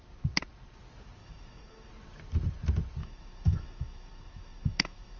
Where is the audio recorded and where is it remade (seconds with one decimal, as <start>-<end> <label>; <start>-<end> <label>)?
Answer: 0.0-1.2 recorded; 1.2-1.9 remade; 1.9-3.0 recorded; 3.0-5.2 remade